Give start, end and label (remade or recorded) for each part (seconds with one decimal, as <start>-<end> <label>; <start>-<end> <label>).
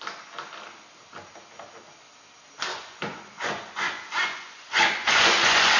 0.0-2.7 recorded; 2.7-5.8 remade